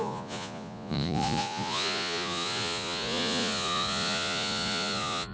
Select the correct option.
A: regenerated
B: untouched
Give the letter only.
A